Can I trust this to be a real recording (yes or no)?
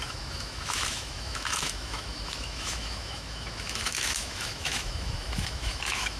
no